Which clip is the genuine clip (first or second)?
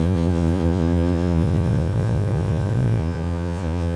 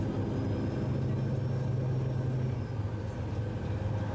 second